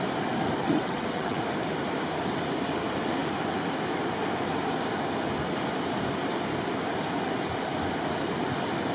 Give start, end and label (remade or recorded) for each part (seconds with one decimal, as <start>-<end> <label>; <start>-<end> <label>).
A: 0.0-0.6 recorded; 0.6-1.4 remade; 1.4-8.9 recorded